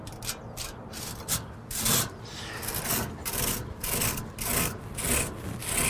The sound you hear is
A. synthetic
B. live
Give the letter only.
B